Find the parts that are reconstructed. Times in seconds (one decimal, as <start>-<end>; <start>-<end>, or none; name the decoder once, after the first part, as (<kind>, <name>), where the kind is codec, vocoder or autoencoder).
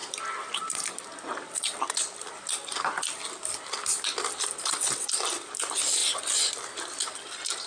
none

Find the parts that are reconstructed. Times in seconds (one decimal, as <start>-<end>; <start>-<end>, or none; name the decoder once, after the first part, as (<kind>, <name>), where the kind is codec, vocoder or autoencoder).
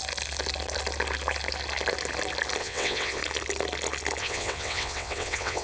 2.6-3.2 (vocoder, WaveNeXt); 4.2-5.6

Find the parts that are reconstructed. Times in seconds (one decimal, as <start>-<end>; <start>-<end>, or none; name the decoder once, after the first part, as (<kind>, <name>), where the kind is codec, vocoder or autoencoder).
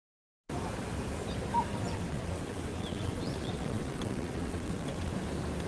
1.7-5.1 (vocoder, WaveNeXt)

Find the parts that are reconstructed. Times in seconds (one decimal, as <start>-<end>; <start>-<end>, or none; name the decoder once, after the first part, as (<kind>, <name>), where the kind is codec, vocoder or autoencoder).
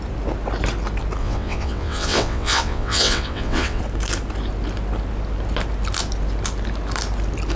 1.2-3.8 (vocoder, WaveNeXt)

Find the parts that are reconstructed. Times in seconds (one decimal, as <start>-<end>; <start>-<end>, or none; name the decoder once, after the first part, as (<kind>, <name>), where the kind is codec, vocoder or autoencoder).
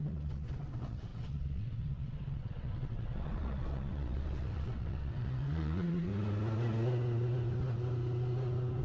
0.0-6.1 (vocoder, WaveNeXt)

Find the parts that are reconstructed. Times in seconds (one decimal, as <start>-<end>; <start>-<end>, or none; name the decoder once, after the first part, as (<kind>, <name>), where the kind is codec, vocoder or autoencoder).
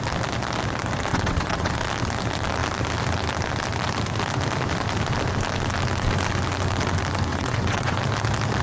1.1-1.7 (vocoder, WaveNeXt); 7.3-8.0